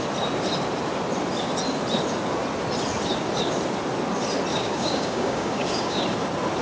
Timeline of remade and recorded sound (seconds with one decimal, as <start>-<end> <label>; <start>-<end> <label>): 0.0-4.5 recorded; 4.5-6.0 remade; 6.0-6.6 recorded